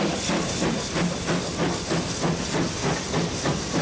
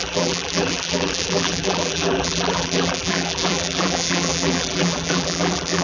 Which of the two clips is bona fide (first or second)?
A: first